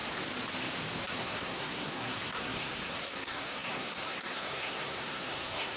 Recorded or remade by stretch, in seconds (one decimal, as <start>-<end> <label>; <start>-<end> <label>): 0.0-1.1 recorded; 1.1-5.8 remade